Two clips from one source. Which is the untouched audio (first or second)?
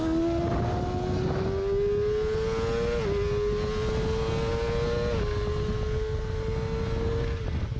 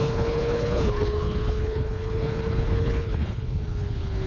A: first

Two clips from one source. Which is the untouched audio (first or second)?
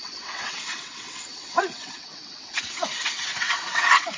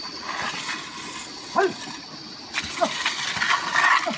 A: second